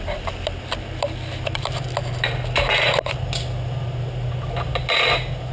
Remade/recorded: recorded